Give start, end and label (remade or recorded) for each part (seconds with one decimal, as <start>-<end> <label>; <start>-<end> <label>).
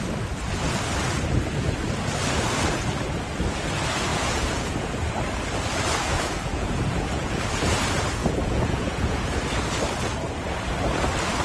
0.0-4.1 recorded; 4.1-5.1 remade; 5.1-6.0 recorded; 6.0-7.4 remade; 7.4-8.2 recorded; 8.2-9.4 remade; 9.4-11.4 recorded